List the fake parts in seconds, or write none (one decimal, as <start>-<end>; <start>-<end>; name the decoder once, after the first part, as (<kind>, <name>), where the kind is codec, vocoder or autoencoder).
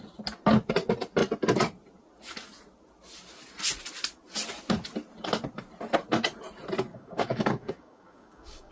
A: 6.9-8.7 (codec, DAC)